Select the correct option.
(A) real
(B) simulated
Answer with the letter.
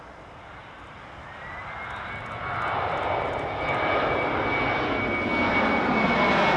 A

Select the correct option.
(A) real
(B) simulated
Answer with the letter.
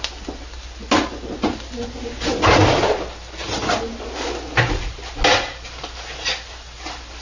A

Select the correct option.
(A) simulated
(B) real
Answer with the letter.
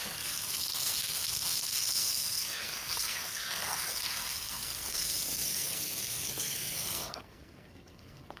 A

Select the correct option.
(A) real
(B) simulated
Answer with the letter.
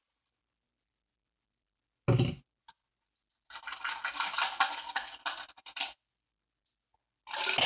A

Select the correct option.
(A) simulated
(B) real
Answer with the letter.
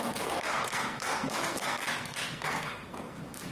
A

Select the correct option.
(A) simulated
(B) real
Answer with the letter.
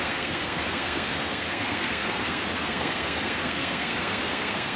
A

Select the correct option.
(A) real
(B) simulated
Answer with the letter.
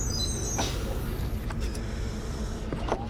A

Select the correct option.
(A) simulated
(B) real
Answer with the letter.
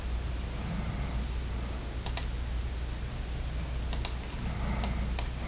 B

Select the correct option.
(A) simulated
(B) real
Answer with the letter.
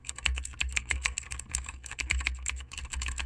A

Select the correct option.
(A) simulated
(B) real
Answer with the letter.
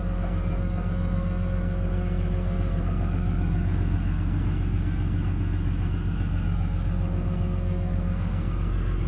A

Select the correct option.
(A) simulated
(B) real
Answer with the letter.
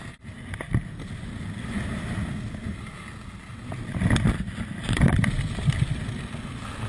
B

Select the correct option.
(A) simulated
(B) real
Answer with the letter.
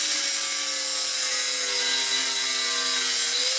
B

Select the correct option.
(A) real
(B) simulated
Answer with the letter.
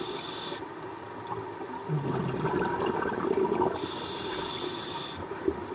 A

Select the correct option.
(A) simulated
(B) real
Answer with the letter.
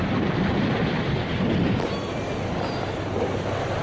B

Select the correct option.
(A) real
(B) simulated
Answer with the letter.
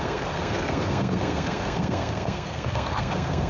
B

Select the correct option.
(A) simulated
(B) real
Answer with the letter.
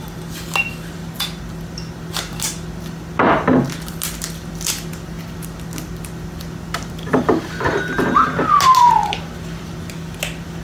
B